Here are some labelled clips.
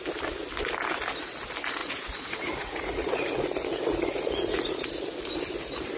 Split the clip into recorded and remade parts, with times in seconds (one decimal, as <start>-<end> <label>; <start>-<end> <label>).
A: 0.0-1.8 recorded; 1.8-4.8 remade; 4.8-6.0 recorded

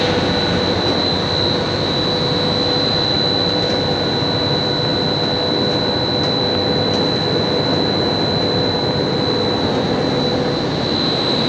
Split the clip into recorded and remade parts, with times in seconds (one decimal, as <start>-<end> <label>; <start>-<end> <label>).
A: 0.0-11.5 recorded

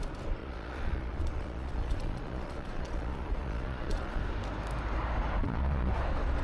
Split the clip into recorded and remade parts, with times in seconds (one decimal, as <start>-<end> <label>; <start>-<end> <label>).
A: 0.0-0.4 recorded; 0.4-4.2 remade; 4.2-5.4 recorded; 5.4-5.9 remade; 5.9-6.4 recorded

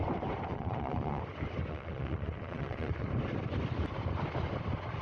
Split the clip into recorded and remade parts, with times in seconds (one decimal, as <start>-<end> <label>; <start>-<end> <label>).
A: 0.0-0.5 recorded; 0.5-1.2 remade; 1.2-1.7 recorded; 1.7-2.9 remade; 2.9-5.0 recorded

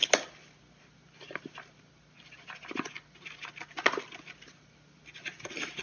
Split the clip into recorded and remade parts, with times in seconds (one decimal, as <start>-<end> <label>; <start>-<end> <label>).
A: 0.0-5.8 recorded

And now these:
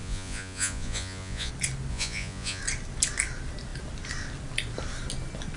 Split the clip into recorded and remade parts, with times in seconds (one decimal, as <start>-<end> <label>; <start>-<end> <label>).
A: 0.0-1.5 remade; 1.5-1.9 recorded; 1.9-2.6 remade; 2.6-5.6 recorded

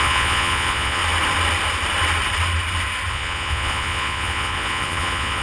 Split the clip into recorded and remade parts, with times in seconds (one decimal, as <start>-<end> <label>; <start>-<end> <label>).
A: 0.0-1.0 remade; 1.0-3.1 recorded; 3.1-5.4 remade

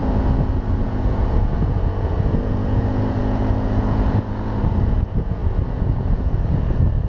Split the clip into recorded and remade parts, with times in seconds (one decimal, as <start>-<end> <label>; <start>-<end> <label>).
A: 0.0-7.1 remade